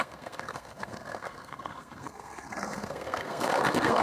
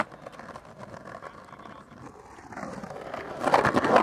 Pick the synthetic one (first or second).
first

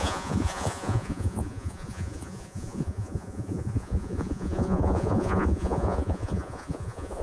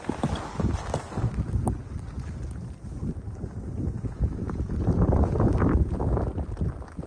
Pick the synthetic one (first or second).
first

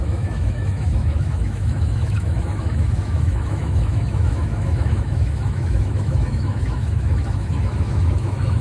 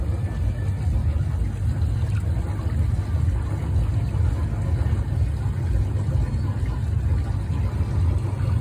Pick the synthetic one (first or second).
first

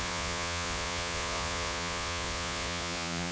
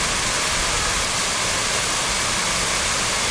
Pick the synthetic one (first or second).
first